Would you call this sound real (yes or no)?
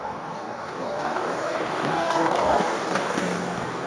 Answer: no